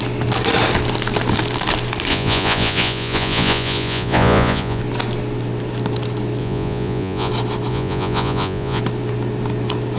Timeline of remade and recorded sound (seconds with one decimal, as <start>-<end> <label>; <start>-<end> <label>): 0.0-2.1 recorded; 2.1-4.8 remade; 4.8-6.4 recorded; 6.4-7.3 remade; 7.3-7.7 recorded; 7.7-8.8 remade; 8.8-10.0 recorded